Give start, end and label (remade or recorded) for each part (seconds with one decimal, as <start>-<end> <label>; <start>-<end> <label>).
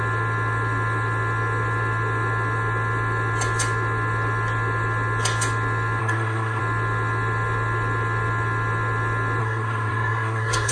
0.0-6.0 recorded; 6.0-6.6 remade; 6.6-9.4 recorded; 9.4-10.7 remade